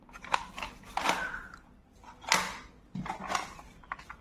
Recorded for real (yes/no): yes